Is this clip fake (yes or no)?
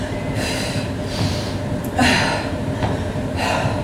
yes